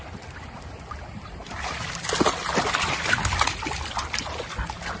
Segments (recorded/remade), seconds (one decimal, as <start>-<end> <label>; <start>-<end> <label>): 0.0-5.0 recorded